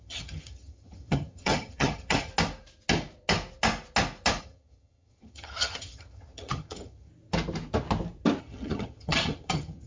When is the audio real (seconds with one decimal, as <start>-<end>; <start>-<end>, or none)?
2.3-4.4; 7.1-8.4